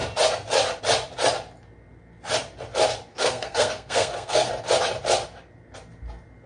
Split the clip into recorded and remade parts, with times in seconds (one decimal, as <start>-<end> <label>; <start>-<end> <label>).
0.0-3.1 recorded; 3.1-4.5 remade; 4.5-6.5 recorded